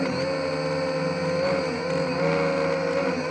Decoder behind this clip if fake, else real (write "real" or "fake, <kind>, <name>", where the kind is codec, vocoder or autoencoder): real